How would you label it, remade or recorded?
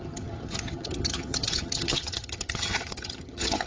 remade